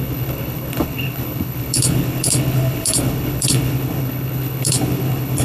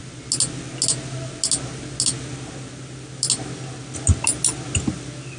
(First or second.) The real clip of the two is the second